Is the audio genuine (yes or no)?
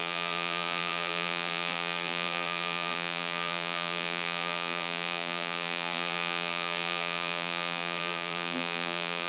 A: no